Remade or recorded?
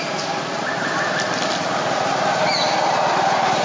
recorded